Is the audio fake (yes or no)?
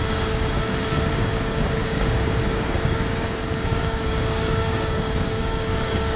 yes